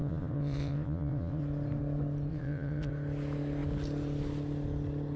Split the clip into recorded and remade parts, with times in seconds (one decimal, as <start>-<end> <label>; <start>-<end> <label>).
0.0-1.4 remade; 1.4-2.3 recorded; 2.3-2.9 remade; 2.9-5.2 recorded